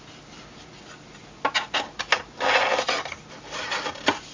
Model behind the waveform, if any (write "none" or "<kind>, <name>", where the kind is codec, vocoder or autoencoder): vocoder, BigVGAN v2